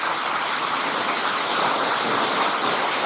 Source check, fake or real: real